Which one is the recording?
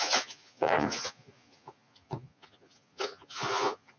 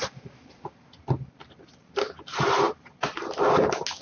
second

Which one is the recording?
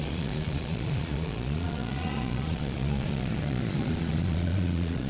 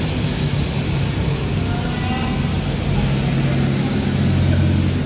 second